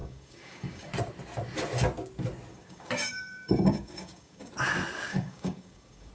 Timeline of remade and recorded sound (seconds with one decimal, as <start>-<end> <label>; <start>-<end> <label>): 0.0-0.9 remade; 0.9-2.5 recorded; 2.5-4.5 remade; 4.5-5.1 recorded; 5.1-6.1 remade